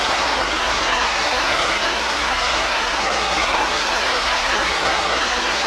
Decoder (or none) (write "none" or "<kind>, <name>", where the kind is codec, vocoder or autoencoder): codec, SNAC